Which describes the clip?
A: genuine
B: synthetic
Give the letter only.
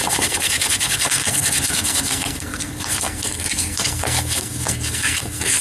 B